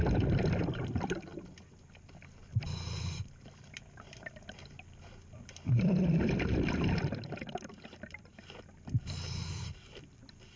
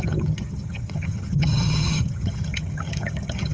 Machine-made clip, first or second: second